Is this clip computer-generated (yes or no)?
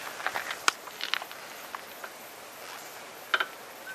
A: no